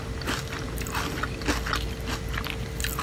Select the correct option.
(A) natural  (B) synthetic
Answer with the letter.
A